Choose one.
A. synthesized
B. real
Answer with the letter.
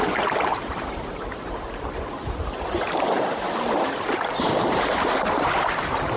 A